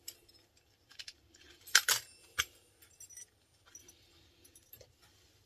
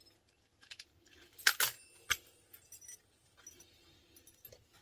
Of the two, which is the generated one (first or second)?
first